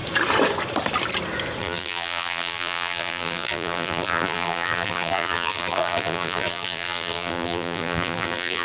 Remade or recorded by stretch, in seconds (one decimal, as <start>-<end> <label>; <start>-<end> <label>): 0.0-1.6 recorded; 1.6-8.6 remade